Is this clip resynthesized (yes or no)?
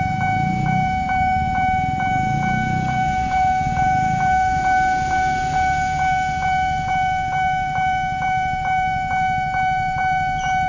yes